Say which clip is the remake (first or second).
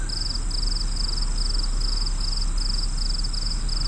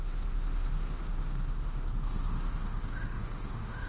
second